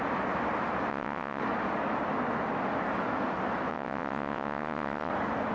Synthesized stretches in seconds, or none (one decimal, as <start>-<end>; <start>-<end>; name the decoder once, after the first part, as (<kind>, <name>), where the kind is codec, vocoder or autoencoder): 0.9-1.4 (vocoder, WaveNeXt); 3.7-5.1